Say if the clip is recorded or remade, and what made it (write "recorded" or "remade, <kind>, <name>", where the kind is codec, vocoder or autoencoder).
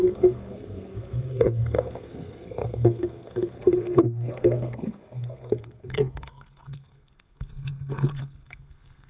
remade, codec, SNAC